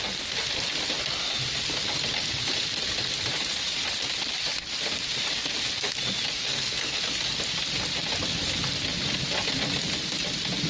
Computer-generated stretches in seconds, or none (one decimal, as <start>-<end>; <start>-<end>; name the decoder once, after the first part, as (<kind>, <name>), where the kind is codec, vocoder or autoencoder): 6.4-7.0 (codec, SNAC)